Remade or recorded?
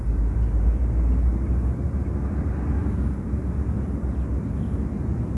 recorded